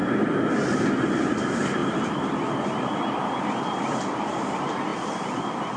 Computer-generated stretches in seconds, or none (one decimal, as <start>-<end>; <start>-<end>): 1.3-1.8; 4.3-5.8